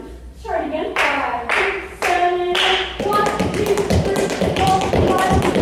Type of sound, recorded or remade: remade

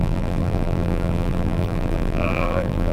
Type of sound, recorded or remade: remade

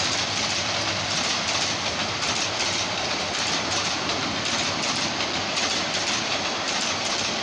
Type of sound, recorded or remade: remade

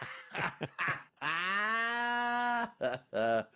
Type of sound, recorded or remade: recorded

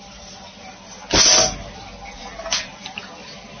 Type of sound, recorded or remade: recorded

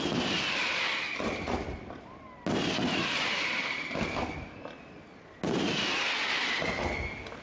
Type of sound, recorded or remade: recorded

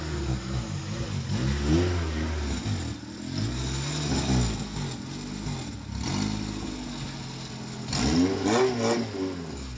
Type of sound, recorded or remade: recorded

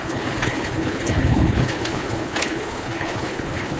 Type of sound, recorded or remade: remade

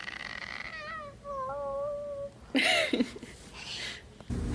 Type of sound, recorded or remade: recorded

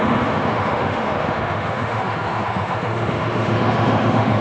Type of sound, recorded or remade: remade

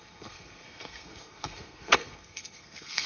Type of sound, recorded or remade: remade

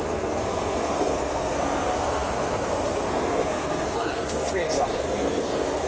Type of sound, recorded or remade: remade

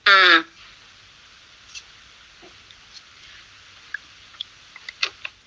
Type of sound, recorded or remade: recorded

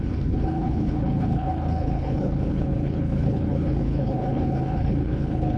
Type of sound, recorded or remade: remade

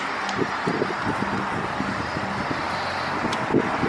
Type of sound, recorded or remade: recorded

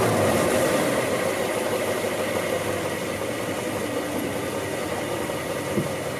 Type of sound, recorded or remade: recorded